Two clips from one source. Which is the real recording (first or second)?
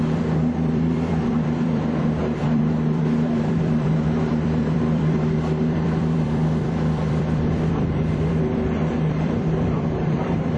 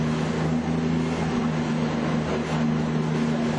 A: second